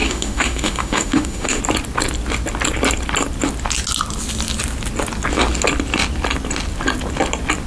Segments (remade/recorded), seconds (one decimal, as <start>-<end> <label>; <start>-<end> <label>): 0.0-1.6 remade; 1.6-7.7 recorded